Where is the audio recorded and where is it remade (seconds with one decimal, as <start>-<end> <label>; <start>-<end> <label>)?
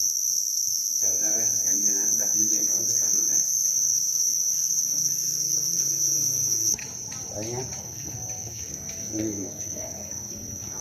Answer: 0.0-6.8 remade; 6.8-7.8 recorded; 7.8-10.8 remade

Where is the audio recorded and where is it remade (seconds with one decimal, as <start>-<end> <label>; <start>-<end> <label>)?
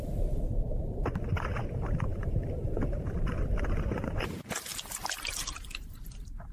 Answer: 0.0-6.5 recorded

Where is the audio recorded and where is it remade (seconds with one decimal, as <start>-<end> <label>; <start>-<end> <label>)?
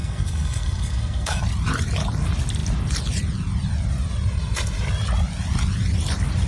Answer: 0.0-1.4 remade; 1.4-6.5 recorded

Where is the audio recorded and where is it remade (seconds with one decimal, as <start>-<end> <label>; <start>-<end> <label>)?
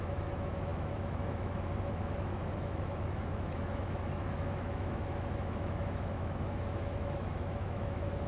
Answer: 0.0-8.3 remade